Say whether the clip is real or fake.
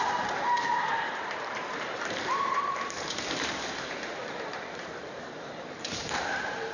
fake